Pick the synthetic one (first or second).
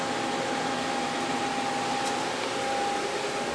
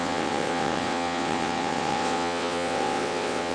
second